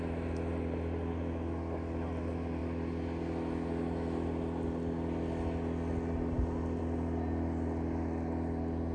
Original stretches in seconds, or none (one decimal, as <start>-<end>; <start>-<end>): 0.0-8.9